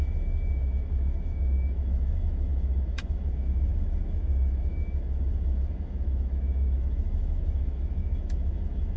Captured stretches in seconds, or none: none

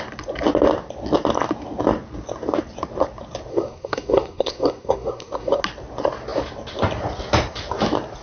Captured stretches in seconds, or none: 0.0-3.5; 5.6-8.2

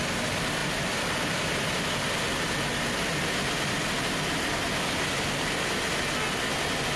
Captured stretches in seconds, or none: 0.0-7.0

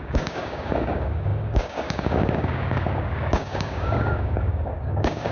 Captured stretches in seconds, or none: none

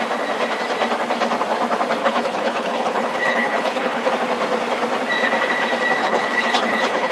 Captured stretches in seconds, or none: 0.0-2.0; 4.1-6.0

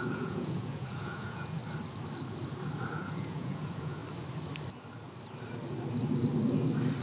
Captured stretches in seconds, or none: 1.6-2.9; 4.0-7.0